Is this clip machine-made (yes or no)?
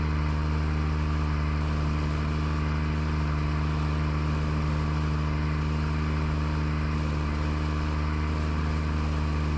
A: no